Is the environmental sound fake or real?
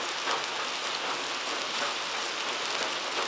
real